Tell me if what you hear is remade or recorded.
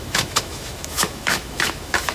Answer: remade